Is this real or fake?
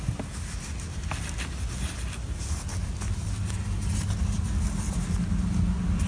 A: real